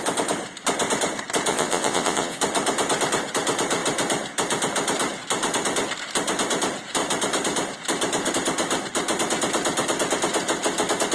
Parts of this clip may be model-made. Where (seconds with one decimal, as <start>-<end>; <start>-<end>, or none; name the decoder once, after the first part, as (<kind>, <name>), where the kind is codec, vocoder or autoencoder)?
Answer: 1.5-2.4 (vocoder, Vocos)